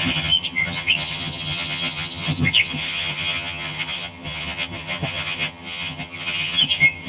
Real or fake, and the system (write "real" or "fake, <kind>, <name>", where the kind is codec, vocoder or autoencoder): fake, vocoder, HiFi-GAN